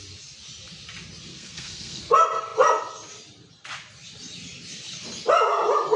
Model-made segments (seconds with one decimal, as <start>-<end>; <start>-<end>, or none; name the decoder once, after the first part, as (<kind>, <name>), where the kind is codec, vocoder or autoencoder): 1.3-2.0 (codec, SNAC)